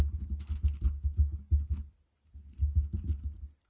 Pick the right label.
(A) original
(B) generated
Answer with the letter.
A